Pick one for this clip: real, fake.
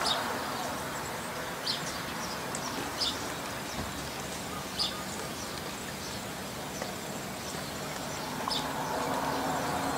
real